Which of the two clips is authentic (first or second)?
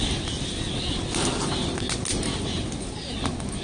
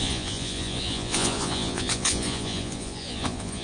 first